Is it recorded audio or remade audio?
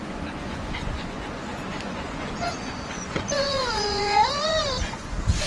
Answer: remade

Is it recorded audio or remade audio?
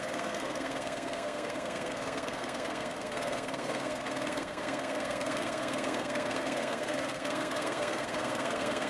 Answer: remade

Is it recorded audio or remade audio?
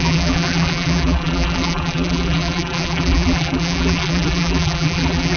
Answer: remade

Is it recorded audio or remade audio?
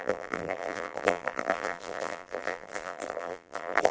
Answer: remade